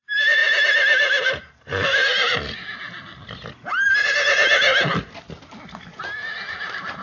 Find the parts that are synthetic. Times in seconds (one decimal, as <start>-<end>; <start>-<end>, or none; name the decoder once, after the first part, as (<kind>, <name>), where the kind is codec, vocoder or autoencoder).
0.0-2.1 (vocoder, BigVGAN v2); 3.8-4.7; 6.6-7.0